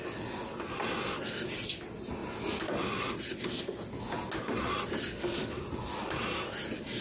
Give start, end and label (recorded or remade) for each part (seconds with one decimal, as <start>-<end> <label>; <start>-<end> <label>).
0.0-7.0 recorded

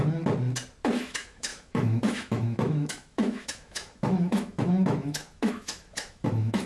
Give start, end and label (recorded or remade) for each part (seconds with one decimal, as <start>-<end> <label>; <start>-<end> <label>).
0.0-1.0 recorded; 1.0-6.7 remade

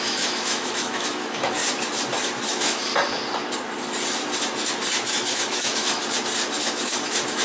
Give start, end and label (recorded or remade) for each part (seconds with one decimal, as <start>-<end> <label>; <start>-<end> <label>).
0.0-1.6 remade; 1.6-2.5 recorded; 2.5-2.9 remade; 2.9-5.1 recorded; 5.1-6.0 remade; 6.0-6.6 recorded; 6.6-7.4 remade

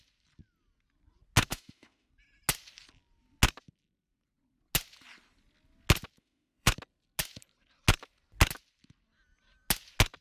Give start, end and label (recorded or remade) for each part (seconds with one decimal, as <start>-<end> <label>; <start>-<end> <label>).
0.0-1.5 recorded; 1.5-2.1 remade; 2.1-6.2 recorded; 6.2-6.7 remade; 6.7-10.2 recorded

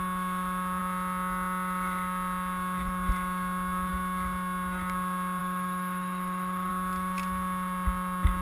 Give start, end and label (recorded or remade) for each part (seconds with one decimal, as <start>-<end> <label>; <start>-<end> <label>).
0.0-5.4 recorded; 5.4-6.7 remade; 6.7-8.4 recorded

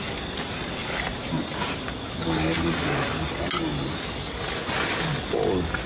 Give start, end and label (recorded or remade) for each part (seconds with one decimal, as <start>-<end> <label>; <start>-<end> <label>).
0.0-5.9 recorded